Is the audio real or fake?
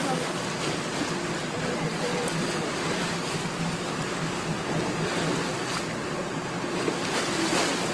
real